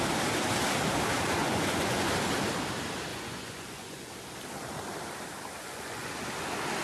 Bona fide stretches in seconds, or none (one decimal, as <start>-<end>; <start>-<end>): 0.0-1.4; 2.1-3.1; 4.1-5.6; 6.1-6.8